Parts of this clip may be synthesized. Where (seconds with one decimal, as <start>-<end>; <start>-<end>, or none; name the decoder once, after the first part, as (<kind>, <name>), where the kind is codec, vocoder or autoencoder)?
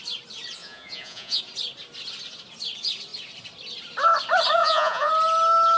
0.6-1.4 (vocoder, Vocos); 4.6-5.1